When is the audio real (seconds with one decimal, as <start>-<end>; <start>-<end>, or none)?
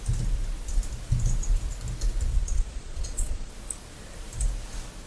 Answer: 0.0-2.3; 3.5-5.1